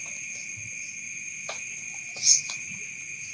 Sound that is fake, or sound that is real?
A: real